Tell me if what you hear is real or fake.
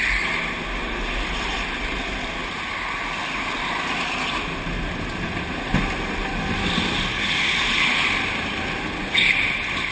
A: real